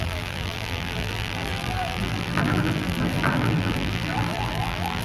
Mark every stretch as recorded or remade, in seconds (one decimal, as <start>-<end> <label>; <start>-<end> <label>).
0.0-5.0 remade

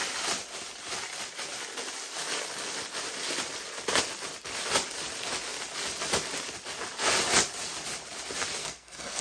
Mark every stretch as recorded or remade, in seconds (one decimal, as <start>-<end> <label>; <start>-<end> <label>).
0.0-8.6 recorded; 8.6-9.2 remade

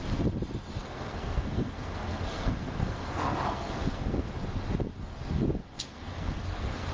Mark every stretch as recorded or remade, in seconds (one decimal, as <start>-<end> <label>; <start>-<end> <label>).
0.0-0.8 recorded; 0.8-4.3 remade; 4.3-5.6 recorded; 5.6-6.9 remade

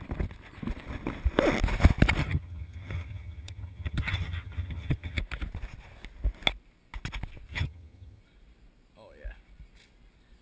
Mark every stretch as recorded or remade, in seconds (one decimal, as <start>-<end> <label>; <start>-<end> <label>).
0.0-2.2 recorded; 2.2-5.2 remade; 5.2-7.5 recorded; 7.5-8.2 remade; 8.2-10.4 recorded

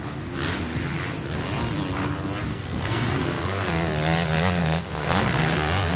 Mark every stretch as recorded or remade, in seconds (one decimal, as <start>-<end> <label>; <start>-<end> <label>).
0.0-2.5 recorded; 2.5-3.7 remade; 3.7-4.6 recorded; 4.6-5.2 remade; 5.2-6.0 recorded

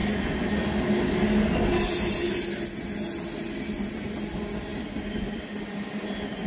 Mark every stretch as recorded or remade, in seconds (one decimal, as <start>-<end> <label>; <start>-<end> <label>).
0.0-6.5 recorded

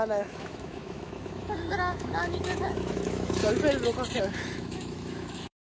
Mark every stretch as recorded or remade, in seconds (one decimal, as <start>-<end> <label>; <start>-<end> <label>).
0.0-3.4 remade; 3.4-4.2 recorded; 4.2-5.8 remade